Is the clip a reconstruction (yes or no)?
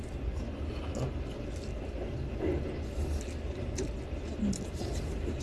no